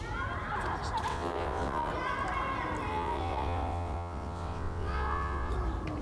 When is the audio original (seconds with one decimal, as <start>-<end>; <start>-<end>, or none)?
0.0-1.1; 1.9-2.9; 5.5-6.0